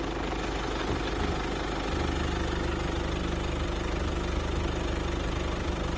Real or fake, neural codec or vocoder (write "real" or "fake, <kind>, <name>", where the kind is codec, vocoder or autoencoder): real